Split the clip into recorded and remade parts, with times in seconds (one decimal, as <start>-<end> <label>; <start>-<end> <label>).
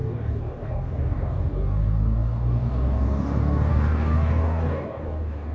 0.0-5.5 remade